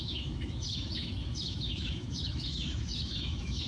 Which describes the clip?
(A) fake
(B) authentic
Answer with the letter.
A